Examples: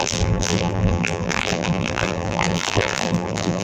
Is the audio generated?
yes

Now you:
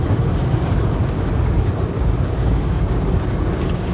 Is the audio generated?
yes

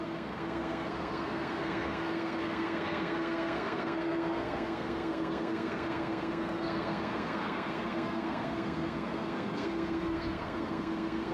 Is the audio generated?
yes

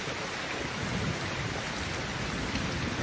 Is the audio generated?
no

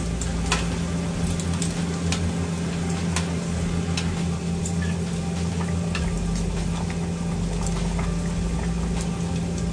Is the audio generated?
no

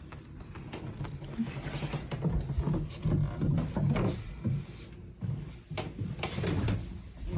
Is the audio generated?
no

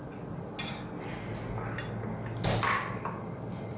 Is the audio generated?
no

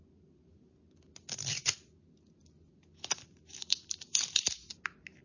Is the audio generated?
no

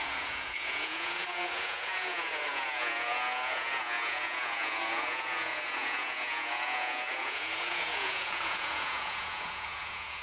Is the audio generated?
yes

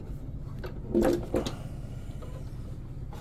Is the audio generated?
no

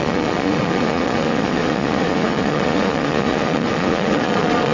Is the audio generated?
yes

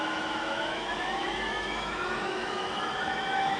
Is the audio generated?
yes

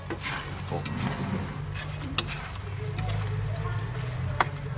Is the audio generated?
no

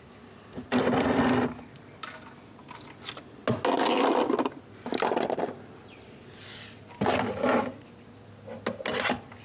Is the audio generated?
no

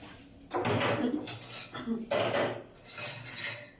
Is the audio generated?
no